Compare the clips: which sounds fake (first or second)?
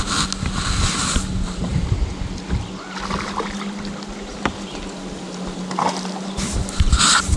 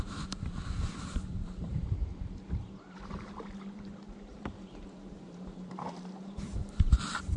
second